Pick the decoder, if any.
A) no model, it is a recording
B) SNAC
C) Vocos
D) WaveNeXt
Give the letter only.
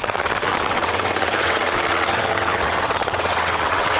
D